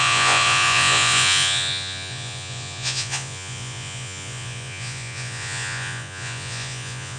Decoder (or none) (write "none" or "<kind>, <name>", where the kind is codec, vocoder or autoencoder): vocoder, Vocos